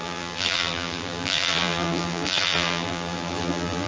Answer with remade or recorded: remade